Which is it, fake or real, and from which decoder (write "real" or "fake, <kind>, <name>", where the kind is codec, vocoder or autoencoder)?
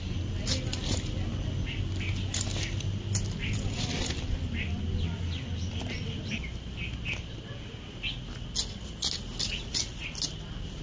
real